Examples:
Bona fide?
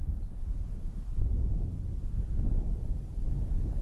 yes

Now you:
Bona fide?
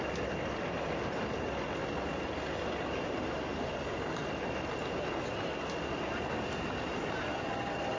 yes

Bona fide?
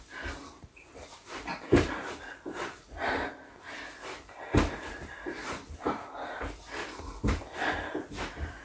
no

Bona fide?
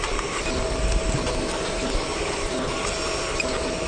yes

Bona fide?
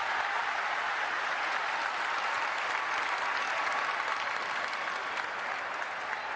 yes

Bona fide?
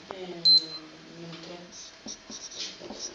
yes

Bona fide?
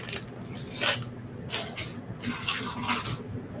yes